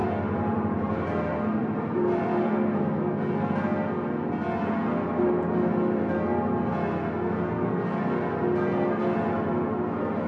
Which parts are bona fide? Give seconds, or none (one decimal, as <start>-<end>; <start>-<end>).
2.5-10.3